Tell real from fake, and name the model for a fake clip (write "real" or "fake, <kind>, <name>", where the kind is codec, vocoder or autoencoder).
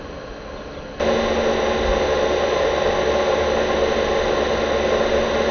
real